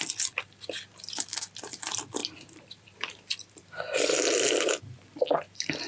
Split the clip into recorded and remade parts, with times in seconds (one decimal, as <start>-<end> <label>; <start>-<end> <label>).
0.0-2.2 recorded; 2.2-4.8 remade; 4.8-5.9 recorded